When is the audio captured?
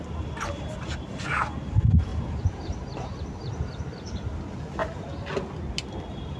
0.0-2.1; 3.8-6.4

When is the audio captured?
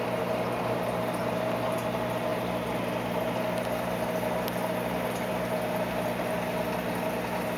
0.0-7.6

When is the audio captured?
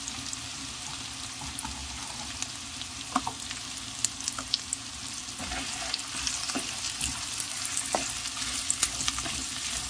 0.0-1.8; 2.3-5.2; 7.7-9.9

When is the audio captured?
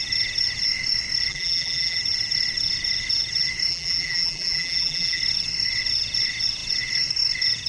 0.0-1.3; 2.0-3.7; 5.2-7.7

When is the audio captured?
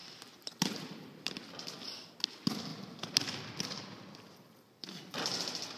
1.3-5.8